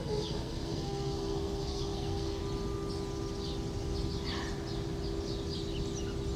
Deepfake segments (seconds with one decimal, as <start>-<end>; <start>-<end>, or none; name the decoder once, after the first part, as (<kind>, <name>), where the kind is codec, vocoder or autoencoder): 0.0-2.4 (codec, SNAC)